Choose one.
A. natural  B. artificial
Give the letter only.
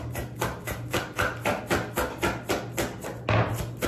A